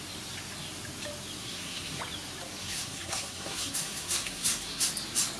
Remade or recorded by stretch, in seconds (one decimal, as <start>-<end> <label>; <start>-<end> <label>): 0.0-1.4 recorded; 1.4-2.0 remade; 2.0-2.6 recorded; 2.6-4.9 remade; 4.9-5.4 recorded